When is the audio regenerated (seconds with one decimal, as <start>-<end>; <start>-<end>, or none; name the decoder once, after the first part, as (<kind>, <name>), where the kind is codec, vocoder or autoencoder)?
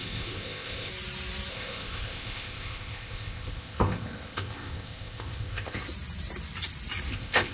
0.0-0.9 (codec, ZipCodec); 1.5-5.8; 7.1-7.5